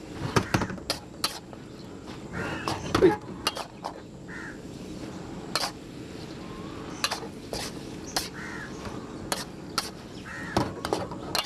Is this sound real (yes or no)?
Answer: yes